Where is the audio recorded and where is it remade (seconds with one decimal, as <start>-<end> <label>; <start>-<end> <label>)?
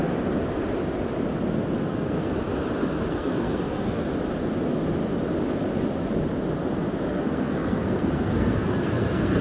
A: 0.0-1.9 recorded; 1.9-2.3 remade; 2.3-3.1 recorded; 3.1-4.1 remade; 4.1-7.1 recorded; 7.1-9.4 remade